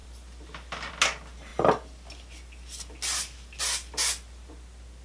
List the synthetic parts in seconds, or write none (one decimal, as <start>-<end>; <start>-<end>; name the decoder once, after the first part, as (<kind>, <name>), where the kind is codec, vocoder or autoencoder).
none